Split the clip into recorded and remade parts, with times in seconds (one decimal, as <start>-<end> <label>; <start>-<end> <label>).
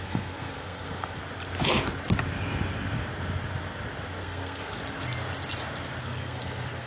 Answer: 0.0-1.2 remade; 1.2-4.2 recorded; 4.2-4.8 remade; 4.8-6.0 recorded; 6.0-6.9 remade